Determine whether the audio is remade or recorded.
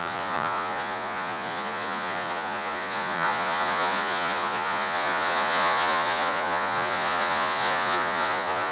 remade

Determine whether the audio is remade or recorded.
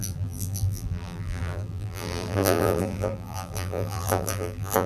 remade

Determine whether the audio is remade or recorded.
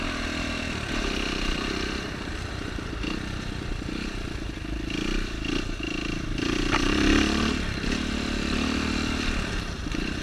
remade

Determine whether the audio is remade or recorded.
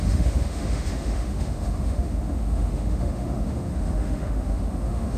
remade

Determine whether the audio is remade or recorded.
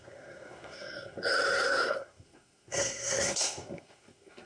remade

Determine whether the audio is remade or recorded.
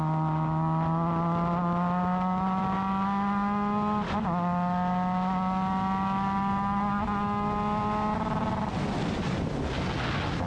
recorded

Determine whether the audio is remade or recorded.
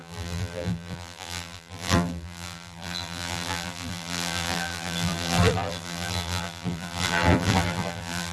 remade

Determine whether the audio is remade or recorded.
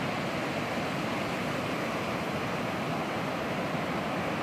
recorded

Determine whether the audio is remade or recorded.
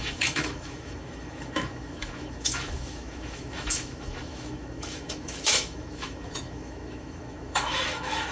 remade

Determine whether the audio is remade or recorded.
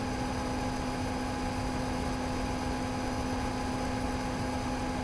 recorded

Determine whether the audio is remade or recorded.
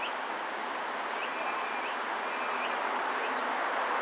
recorded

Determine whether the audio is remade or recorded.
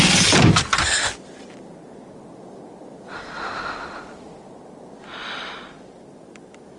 recorded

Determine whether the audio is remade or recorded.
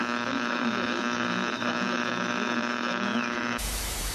remade